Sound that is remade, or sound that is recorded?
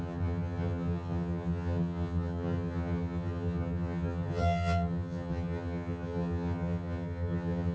remade